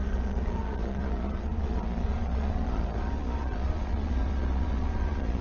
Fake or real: fake